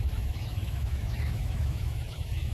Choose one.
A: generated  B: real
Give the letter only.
A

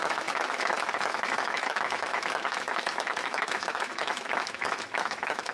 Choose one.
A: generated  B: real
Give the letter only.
A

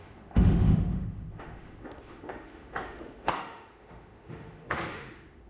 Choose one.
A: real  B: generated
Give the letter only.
B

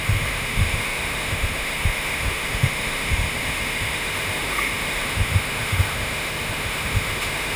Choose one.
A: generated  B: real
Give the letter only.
A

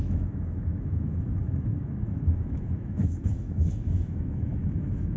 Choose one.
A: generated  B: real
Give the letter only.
A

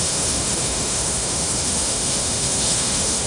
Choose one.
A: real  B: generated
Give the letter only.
B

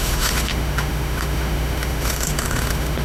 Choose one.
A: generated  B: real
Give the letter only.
A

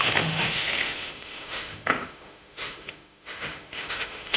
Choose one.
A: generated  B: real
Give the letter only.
A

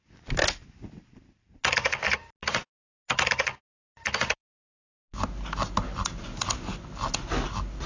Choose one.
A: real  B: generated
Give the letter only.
A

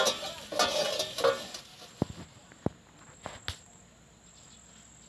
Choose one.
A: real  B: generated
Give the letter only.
A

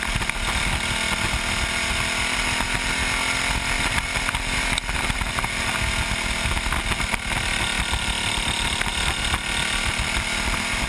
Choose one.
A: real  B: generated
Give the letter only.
A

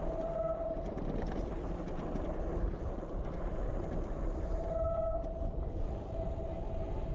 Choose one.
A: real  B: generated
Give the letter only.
A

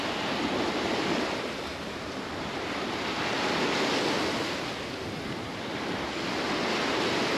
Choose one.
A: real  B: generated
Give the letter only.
A